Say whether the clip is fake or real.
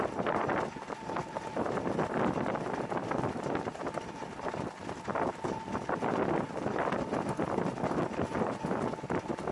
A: real